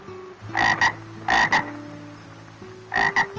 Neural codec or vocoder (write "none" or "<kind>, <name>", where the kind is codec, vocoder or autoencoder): none